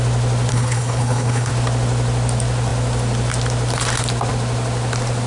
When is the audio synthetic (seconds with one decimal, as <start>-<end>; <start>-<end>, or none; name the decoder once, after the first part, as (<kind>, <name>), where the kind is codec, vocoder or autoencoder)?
0.5-1.5 (codec, HILCodec)